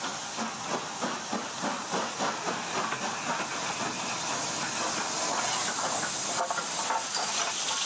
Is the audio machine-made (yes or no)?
no